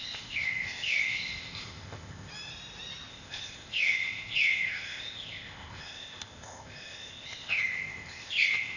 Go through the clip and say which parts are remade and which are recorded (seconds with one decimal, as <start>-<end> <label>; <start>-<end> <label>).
0.0-2.3 remade; 2.3-3.1 recorded; 3.1-8.8 remade